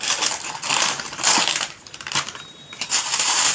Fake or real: fake